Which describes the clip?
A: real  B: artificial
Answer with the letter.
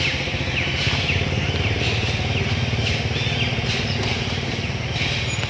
A